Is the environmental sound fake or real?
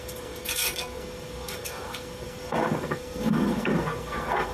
fake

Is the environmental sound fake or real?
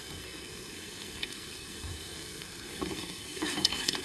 fake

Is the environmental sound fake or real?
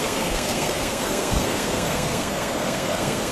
fake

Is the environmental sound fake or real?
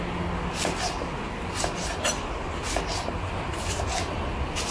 real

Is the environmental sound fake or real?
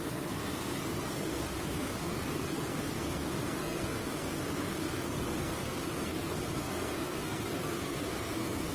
fake